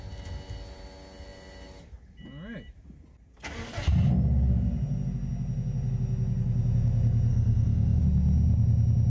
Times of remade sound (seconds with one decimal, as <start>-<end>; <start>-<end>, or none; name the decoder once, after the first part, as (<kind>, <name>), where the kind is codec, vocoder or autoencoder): 7.3-8.0 (codec, SNAC)